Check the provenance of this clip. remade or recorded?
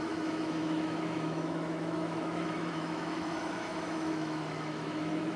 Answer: remade